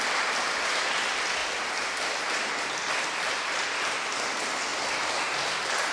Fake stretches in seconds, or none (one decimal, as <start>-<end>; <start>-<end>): none